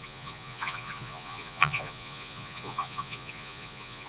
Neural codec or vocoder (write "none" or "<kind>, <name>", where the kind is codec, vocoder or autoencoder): vocoder, Vocos